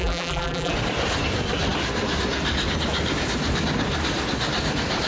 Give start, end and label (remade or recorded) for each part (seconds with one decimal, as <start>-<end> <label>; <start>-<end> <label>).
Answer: 0.0-0.7 remade; 0.7-5.1 recorded